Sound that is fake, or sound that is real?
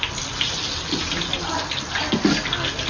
real